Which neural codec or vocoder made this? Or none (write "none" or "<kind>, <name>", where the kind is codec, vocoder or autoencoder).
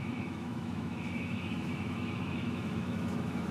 autoencoder, DAC-VAE